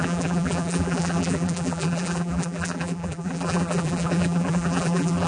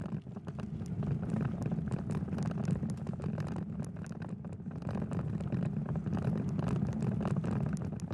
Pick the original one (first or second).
second